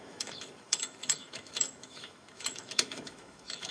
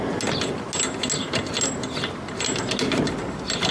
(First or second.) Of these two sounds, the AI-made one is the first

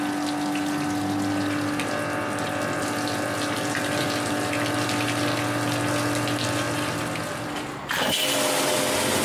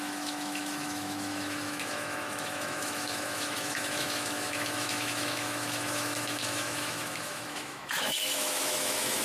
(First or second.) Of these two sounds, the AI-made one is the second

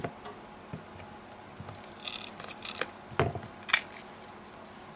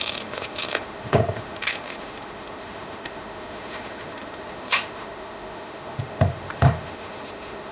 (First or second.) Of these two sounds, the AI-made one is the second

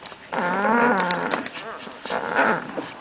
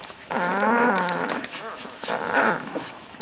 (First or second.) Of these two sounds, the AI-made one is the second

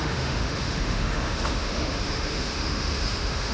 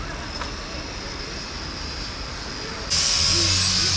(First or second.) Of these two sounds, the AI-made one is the first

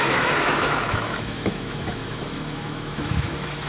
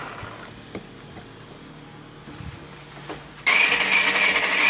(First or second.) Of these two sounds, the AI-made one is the first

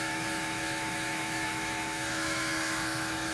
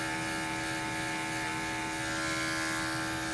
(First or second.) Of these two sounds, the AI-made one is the first